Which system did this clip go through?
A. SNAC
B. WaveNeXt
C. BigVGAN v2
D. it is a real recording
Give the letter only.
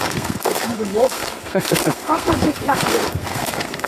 A